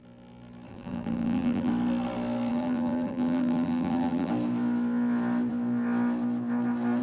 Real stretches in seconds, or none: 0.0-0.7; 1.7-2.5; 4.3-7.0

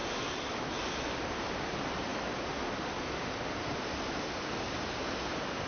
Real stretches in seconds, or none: 0.0-1.3; 2.1-5.7

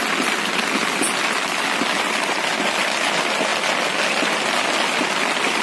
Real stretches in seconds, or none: 0.0-5.6

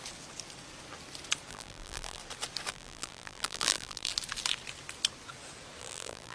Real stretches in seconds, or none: 0.0-1.5; 2.2-2.7; 4.1-5.8

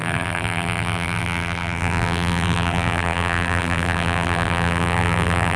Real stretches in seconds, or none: none